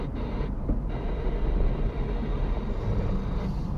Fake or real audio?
real